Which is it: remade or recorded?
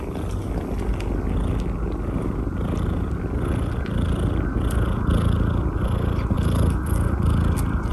recorded